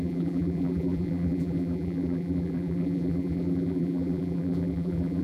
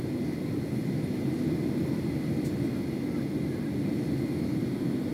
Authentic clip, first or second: second